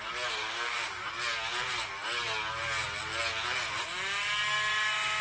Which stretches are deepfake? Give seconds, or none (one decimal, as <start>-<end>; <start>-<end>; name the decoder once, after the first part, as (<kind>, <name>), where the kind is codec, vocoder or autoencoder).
0.4-1.1 (codec, DAC)